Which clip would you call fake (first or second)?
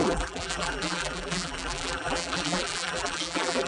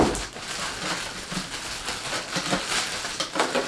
first